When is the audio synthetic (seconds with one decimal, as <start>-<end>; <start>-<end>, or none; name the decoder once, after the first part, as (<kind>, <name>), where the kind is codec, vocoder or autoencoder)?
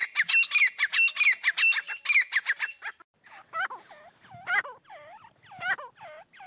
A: none